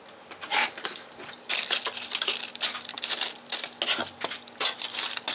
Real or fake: real